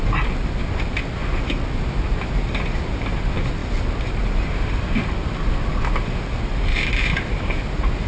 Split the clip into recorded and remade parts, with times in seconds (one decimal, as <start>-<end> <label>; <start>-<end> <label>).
0.0-6.7 recorded; 6.7-7.6 remade; 7.6-8.1 recorded